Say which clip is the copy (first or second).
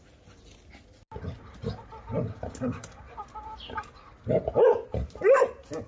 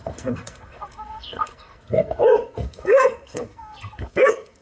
second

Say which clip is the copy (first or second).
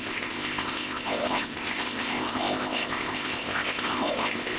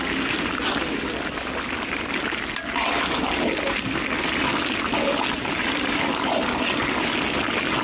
first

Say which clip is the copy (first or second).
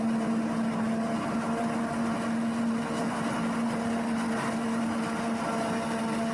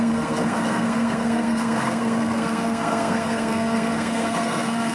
second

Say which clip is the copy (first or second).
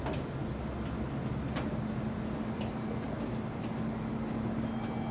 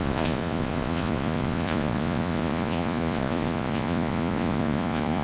second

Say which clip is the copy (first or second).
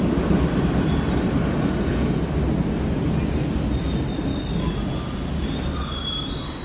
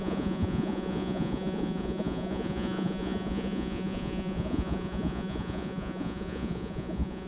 second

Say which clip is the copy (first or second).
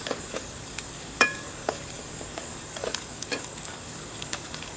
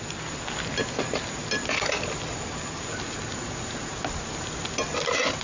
first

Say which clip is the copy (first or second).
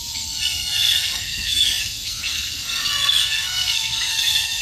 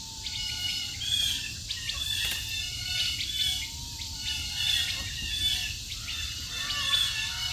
first